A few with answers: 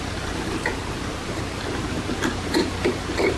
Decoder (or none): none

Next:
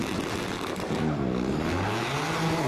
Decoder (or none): none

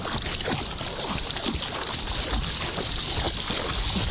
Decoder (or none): none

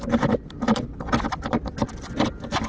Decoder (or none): none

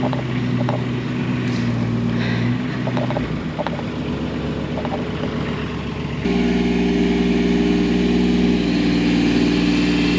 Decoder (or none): none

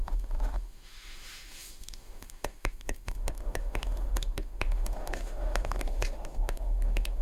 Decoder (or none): autoencoder, DAC-VAE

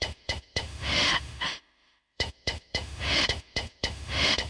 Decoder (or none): autoencoder, DAC-VAE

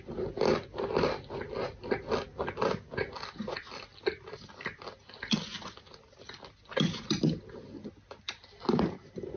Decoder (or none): none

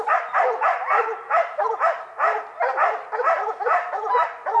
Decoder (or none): none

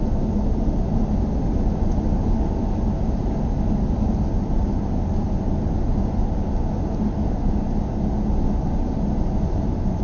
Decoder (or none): none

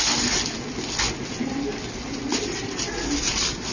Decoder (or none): none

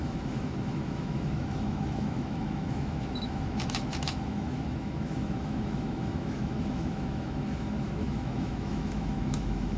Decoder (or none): autoencoder, DAC-VAE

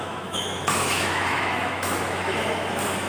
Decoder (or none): autoencoder, DAC-VAE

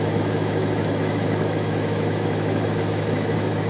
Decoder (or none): autoencoder, DAC-VAE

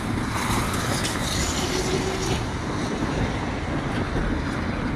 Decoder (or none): none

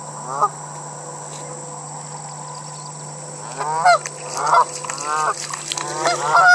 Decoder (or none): none